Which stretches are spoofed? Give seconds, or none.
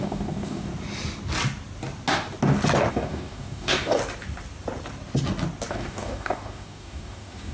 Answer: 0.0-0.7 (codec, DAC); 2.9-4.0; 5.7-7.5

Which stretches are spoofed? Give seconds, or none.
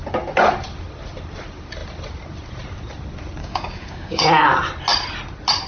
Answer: 3.4-4.2 (codec, DAC)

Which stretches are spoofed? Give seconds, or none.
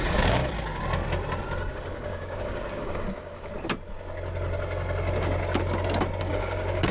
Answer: 0.0-0.4 (codec, DAC); 1.7-3.5; 6.2-6.9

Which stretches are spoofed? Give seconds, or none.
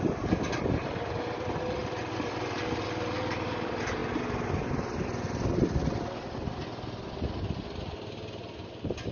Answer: none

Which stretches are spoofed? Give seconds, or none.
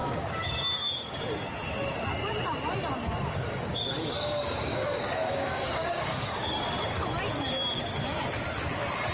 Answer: 0.0-1.2 (codec, DAC); 3.0-7.1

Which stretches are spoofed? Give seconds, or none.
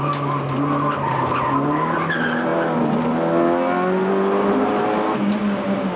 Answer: 5.4-6.0 (codec, DAC)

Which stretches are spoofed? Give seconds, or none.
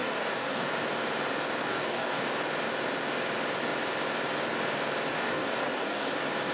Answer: 0.0-0.7 (codec, DAC); 1.6-2.2; 5.1-6.1